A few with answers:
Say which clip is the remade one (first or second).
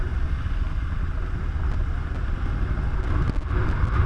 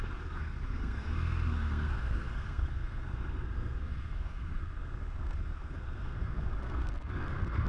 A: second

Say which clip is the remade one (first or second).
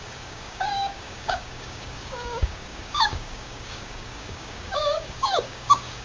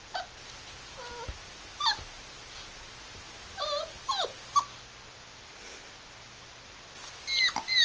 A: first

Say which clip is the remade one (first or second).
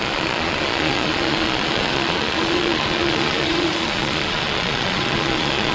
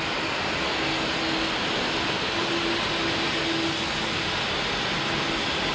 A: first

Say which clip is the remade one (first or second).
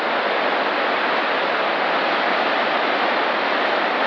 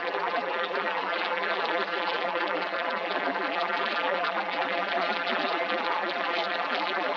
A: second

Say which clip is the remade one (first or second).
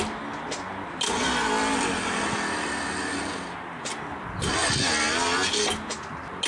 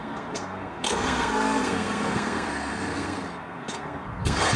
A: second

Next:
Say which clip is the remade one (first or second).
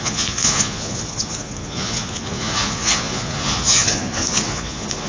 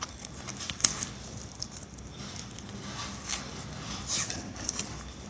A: first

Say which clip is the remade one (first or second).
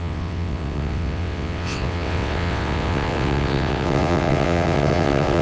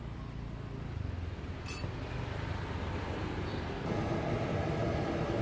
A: first